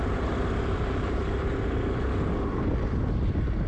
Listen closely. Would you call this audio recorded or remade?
recorded